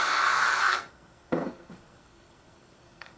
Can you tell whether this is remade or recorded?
remade